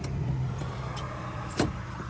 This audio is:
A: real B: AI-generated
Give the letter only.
B